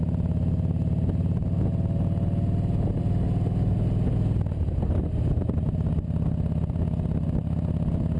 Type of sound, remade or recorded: recorded